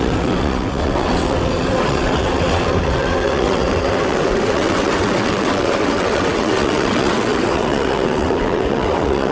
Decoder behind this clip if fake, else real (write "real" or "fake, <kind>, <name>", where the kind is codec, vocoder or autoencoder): fake, vocoder, WaveNeXt